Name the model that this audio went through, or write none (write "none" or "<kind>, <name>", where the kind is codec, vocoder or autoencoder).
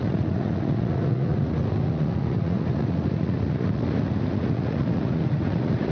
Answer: vocoder, Vocos